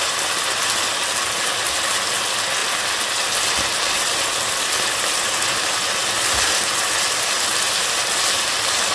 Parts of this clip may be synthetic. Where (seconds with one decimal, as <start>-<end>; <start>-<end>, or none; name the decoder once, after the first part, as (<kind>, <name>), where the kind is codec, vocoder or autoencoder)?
none